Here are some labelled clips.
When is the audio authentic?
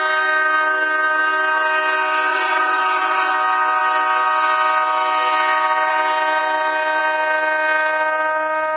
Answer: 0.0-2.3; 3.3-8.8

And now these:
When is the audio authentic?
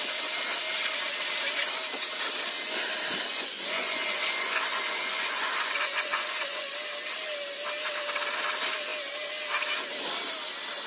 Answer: 0.0-3.3; 6.7-10.9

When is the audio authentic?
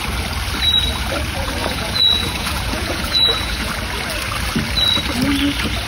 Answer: 0.0-1.6; 3.7-5.9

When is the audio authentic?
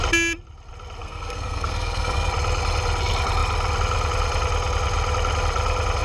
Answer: 0.0-1.0; 2.3-6.0